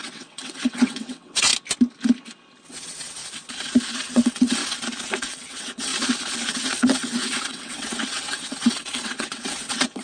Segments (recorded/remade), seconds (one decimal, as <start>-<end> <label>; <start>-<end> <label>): 0.0-1.5 remade; 1.5-2.7 recorded; 2.7-3.2 remade; 3.2-3.9 recorded; 3.9-4.6 remade; 4.6-5.1 recorded; 5.1-5.9 remade; 5.9-6.5 recorded; 6.5-10.0 remade